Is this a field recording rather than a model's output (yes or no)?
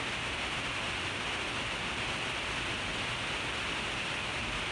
yes